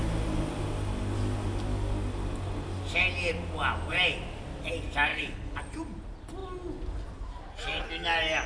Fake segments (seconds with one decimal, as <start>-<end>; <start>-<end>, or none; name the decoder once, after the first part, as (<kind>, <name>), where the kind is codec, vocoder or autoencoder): 5.1-5.6 (codec, HILCodec)